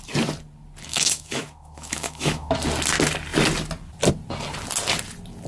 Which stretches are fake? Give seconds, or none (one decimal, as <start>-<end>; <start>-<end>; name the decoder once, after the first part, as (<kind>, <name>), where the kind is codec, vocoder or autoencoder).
0.9-2.5 (autoencoder, DAC-VAE)